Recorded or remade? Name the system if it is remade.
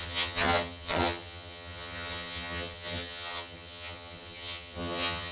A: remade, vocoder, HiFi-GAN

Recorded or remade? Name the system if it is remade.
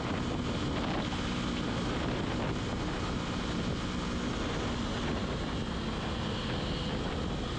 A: recorded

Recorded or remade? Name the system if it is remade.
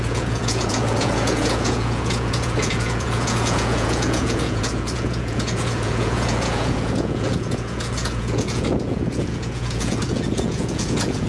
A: remade, vocoder, Vocos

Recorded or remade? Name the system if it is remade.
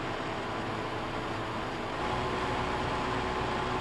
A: recorded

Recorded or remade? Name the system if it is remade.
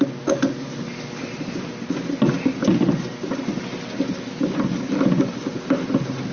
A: recorded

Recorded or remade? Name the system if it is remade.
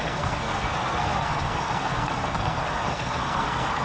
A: remade, codec, SNAC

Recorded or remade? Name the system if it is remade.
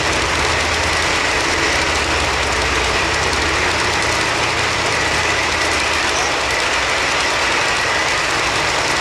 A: recorded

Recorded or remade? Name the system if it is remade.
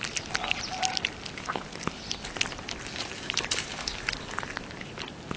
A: recorded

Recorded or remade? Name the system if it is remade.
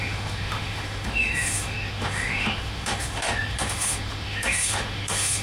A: remade, autoencoder, DAC-VAE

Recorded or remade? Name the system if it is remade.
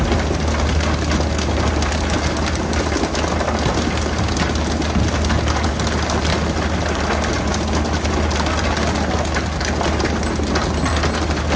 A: recorded